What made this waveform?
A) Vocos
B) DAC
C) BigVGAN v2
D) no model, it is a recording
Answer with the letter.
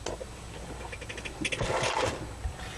D